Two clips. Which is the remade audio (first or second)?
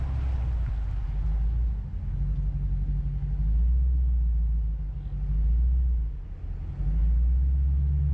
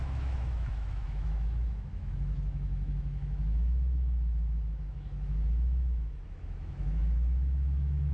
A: second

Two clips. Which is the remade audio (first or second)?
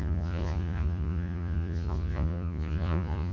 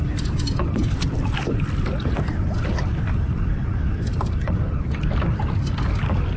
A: first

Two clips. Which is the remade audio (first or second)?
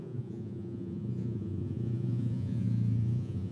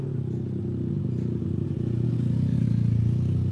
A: first